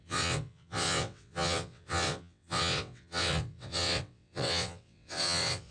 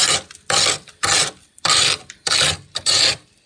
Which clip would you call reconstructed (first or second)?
first